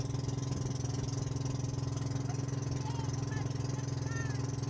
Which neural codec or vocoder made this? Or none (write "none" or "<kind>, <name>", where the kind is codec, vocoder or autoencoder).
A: none